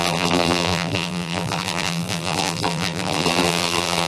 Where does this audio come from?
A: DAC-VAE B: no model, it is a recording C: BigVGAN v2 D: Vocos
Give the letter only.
C